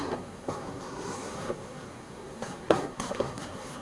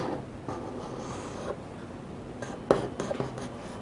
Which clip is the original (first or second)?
second